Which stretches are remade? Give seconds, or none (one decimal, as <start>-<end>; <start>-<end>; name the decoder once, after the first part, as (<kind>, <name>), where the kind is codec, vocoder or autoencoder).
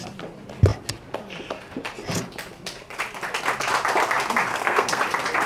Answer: 4.5-5.0 (codec, SNAC)